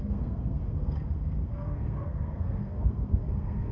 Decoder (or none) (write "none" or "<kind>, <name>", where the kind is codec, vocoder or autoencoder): codec, SNAC